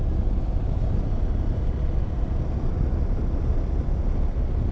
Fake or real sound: real